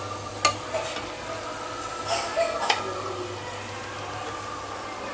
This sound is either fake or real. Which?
real